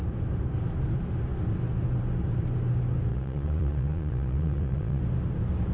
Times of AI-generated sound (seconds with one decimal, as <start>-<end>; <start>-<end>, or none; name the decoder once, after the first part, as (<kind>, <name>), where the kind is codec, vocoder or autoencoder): 3.1-5.0 (vocoder, Vocos)